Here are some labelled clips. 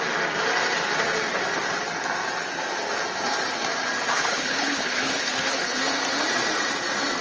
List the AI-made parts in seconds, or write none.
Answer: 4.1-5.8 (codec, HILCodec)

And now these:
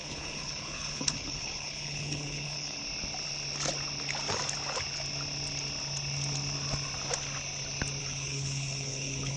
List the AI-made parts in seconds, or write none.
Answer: 0.0-2.8 (codec, HILCodec); 8.0-9.4

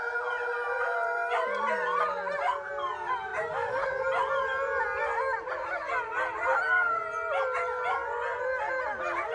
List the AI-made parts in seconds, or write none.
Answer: none